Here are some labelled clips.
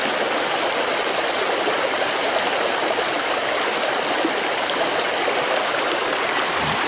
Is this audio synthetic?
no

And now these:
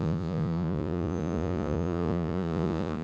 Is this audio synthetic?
yes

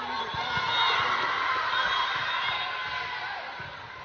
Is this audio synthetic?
no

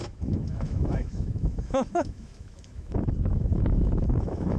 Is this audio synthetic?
yes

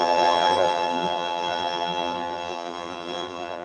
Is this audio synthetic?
yes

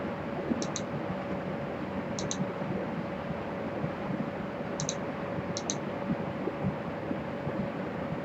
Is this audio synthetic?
no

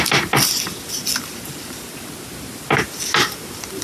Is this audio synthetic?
no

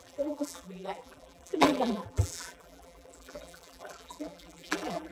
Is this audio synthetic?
yes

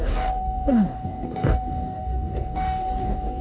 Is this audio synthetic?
yes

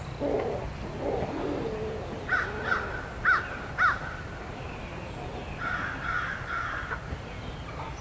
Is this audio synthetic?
no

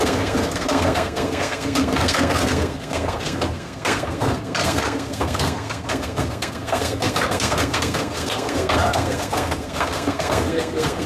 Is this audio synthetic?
yes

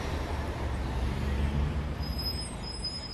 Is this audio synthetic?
yes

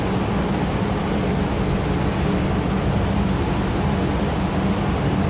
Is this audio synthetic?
no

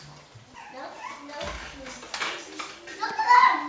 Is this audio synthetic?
no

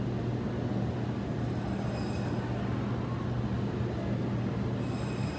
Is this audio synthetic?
no